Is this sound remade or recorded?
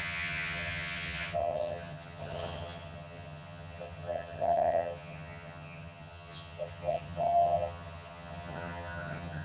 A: remade